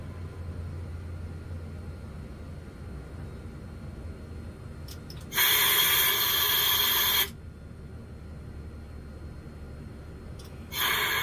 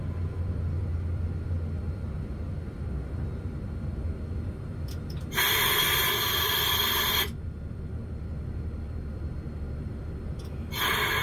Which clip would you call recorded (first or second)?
first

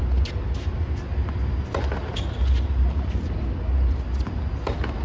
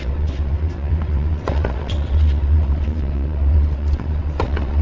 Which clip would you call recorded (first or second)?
first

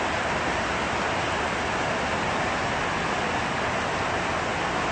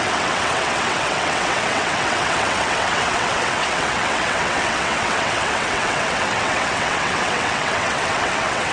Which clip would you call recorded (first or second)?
first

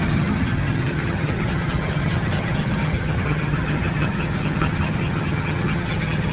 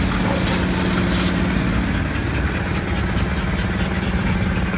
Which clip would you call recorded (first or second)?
second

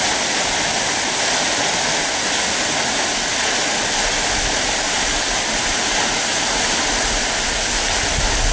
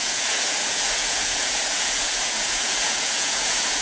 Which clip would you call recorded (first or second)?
first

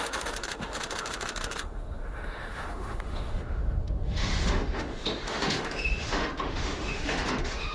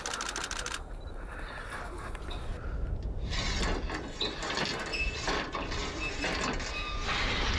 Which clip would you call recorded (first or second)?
second